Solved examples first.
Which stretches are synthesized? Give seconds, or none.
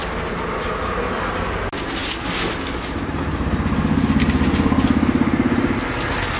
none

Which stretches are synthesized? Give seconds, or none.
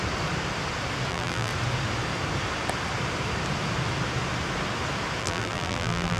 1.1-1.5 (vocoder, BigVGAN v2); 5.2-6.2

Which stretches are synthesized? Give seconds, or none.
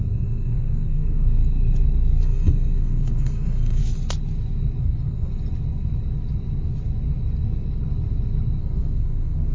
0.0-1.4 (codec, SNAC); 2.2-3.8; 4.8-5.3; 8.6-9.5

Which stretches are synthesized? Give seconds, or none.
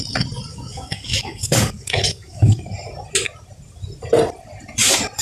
0.5-2.6 (codec, DAC)